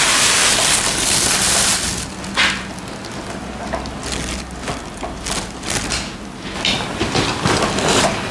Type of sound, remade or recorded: recorded